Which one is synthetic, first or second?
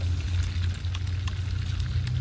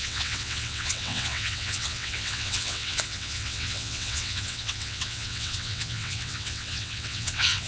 second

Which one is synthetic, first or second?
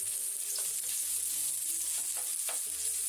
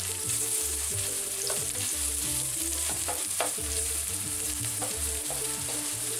second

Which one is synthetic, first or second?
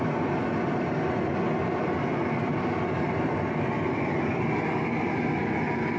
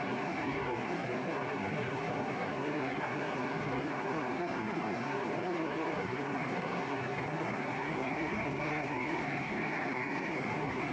second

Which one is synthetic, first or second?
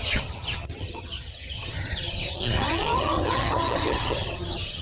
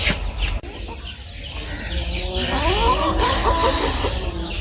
first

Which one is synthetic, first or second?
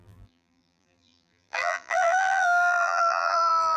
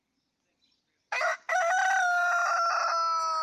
first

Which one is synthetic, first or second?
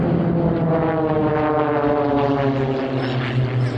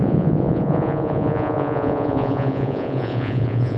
second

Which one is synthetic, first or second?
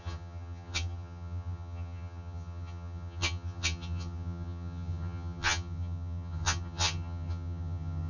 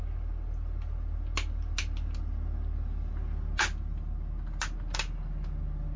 first